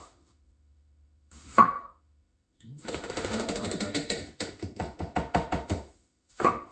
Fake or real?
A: fake